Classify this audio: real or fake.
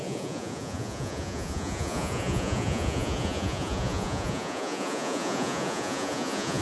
fake